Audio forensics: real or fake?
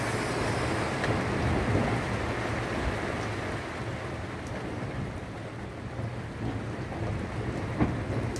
real